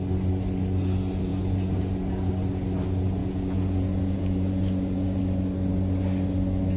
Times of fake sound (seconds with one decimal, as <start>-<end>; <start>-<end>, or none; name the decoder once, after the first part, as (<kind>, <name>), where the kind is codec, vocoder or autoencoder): 1.3-2.3 (vocoder, Vocos); 3.2-5.2